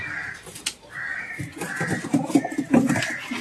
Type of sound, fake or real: real